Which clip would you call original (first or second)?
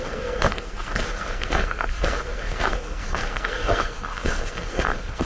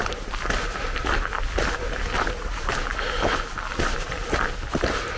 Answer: second